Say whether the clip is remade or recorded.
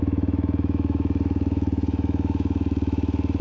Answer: remade